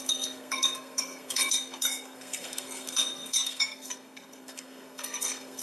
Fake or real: fake